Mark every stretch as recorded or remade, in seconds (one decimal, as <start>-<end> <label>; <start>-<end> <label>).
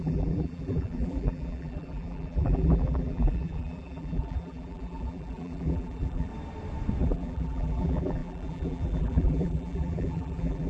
0.0-6.3 remade; 6.3-7.0 recorded; 7.0-10.7 remade